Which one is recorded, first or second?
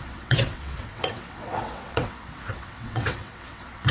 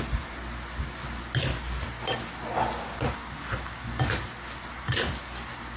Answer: second